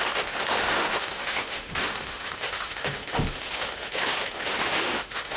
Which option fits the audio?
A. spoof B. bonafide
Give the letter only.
A